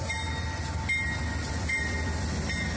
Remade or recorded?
recorded